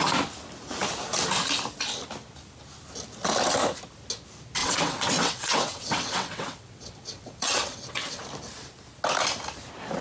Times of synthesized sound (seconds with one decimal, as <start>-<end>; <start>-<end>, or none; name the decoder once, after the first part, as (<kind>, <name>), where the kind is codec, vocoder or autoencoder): 4.6-8.2 (vocoder, WaveNeXt)